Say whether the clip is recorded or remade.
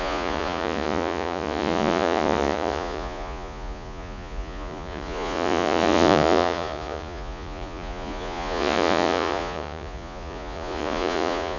remade